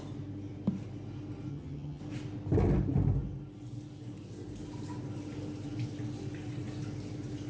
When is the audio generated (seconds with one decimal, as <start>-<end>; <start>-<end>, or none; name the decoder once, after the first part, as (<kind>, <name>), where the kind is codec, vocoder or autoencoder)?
1.5-2.0 (vocoder, HiFi-GAN)

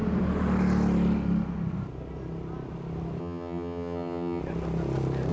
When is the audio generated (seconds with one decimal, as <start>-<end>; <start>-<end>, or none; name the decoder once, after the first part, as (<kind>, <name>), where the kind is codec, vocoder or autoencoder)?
3.2-4.4 (vocoder, HiFi-GAN)

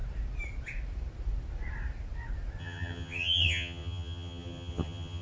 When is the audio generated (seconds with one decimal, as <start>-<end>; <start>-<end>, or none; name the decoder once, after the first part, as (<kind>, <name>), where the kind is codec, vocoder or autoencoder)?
2.6-5.2 (vocoder, HiFi-GAN)